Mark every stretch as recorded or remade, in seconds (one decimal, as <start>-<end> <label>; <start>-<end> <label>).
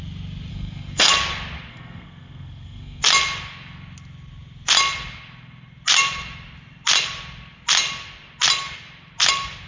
0.0-0.5 recorded; 0.5-1.1 remade; 1.1-1.7 recorded; 1.7-3.0 remade; 3.0-9.7 recorded